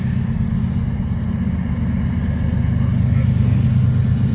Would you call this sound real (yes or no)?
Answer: yes